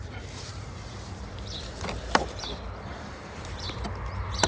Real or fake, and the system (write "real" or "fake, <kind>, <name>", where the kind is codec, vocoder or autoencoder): fake, vocoder, BigVGAN v2